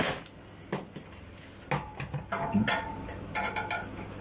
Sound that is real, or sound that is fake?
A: real